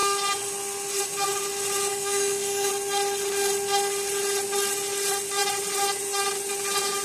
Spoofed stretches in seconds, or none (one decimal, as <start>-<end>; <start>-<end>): 1.9-2.7